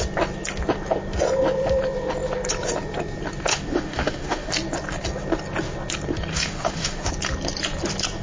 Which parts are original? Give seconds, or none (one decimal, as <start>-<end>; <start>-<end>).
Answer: 0.0-3.5; 4.5-6.3; 7.1-8.2